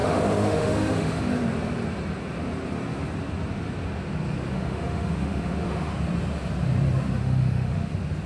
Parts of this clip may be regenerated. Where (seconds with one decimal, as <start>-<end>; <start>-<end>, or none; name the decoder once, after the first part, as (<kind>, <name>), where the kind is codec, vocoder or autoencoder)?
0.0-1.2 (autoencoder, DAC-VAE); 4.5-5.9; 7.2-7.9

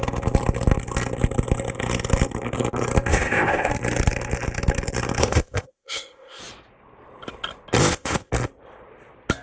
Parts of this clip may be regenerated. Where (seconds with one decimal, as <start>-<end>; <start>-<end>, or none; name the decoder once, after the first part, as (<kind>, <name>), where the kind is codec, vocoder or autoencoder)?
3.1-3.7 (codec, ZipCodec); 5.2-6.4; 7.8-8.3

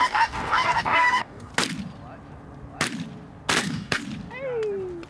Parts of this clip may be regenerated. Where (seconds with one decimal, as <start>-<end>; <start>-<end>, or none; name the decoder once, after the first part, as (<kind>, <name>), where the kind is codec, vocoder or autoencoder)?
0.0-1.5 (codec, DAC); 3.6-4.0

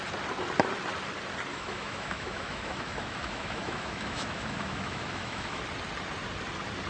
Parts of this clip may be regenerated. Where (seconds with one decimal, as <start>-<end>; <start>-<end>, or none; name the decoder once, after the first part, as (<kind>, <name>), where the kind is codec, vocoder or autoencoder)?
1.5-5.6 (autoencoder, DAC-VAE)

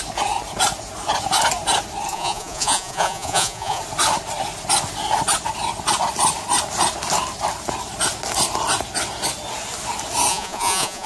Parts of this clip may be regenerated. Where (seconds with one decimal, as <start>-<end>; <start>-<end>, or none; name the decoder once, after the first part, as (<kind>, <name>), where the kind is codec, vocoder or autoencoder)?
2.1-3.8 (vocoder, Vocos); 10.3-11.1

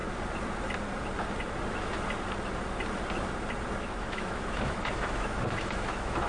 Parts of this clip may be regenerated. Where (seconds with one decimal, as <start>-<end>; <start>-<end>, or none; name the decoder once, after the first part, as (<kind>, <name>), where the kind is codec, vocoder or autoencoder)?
3.8-6.3 (autoencoder, DAC-VAE)

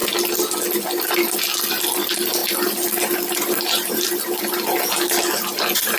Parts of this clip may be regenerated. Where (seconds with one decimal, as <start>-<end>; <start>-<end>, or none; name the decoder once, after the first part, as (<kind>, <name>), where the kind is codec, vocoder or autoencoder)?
2.4-4.4 (vocoder, BigVGAN v2)